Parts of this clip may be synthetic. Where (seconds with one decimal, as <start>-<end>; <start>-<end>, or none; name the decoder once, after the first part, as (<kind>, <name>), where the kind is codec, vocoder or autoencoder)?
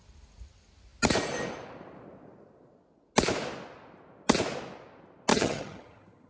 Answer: 5.3-6.3 (vocoder, HiFi-GAN)